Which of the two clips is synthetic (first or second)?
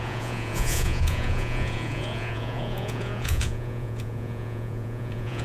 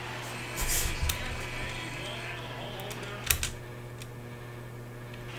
first